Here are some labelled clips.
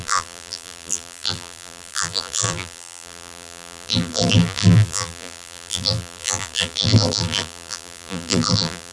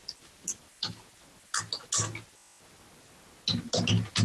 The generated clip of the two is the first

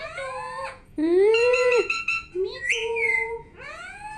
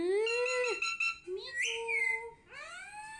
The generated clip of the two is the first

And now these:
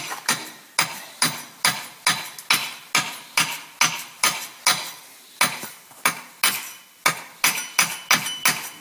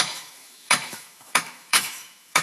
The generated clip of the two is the second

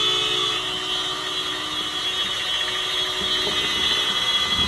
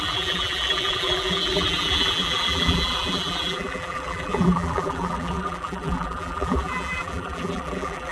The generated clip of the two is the second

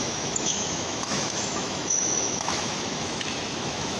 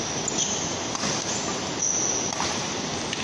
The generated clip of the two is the first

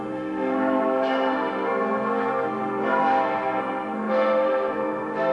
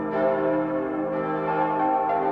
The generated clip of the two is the first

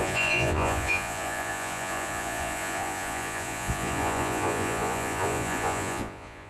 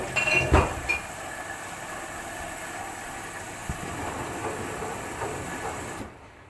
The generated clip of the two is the first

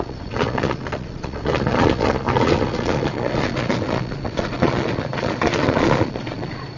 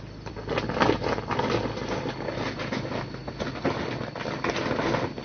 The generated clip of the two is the first